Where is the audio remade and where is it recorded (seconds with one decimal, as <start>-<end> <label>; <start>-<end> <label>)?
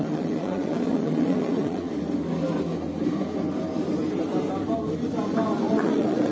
0.0-1.9 remade; 1.9-5.7 recorded; 5.7-6.3 remade